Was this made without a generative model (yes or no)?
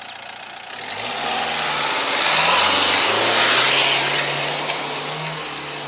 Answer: yes